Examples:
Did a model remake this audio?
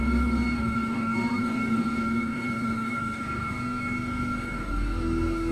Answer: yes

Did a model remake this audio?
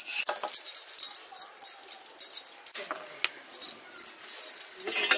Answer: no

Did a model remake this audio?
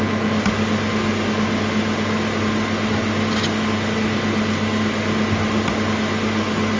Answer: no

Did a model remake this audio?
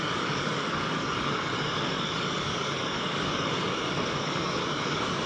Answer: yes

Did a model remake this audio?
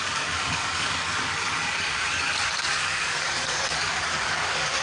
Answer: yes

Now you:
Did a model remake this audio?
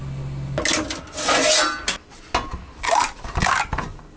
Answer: no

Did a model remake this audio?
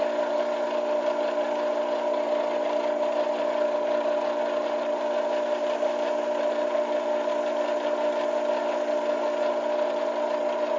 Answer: no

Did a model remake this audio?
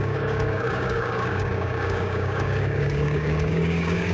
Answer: yes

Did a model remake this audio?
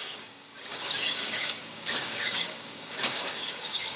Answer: yes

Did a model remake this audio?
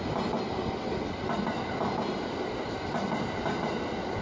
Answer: no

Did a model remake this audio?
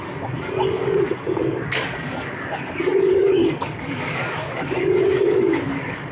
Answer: yes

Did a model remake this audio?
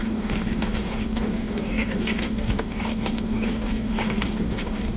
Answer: yes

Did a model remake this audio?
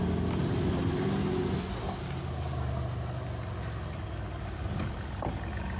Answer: no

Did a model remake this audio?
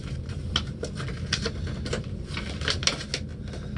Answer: no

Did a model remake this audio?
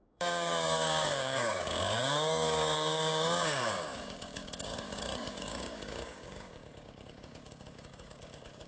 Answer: yes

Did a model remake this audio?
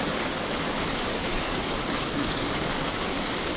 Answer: yes